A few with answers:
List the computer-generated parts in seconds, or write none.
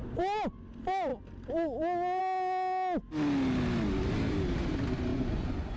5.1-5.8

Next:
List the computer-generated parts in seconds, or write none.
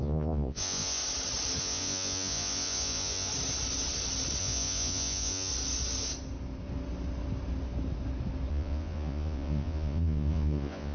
0.0-1.0; 1.6-3.3; 4.4-5.5; 8.5-10.9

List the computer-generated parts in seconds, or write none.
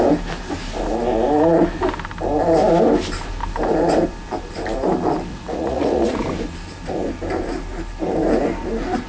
5.3-6.2